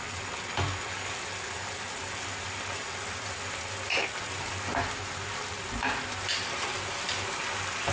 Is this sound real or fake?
real